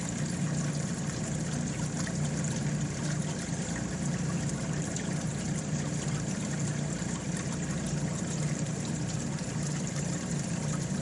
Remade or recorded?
recorded